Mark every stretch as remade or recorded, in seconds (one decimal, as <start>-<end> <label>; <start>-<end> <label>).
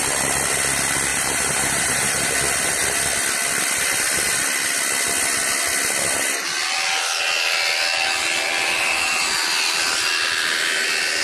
0.0-1.1 recorded; 1.1-2.3 remade; 2.3-11.2 recorded